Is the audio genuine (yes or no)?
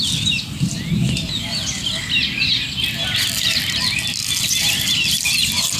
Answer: yes